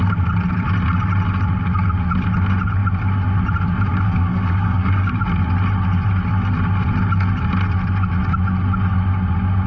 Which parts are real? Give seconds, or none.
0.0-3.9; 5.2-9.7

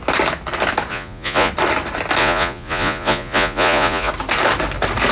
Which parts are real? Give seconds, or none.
0.0-0.9; 1.5-2.2; 4.1-5.1

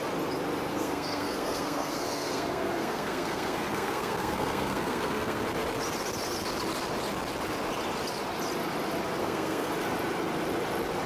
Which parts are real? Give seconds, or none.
0.0-0.7; 5.4-9.2; 9.7-11.1

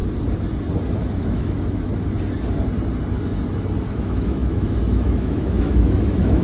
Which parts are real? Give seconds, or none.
0.0-1.2; 1.9-3.9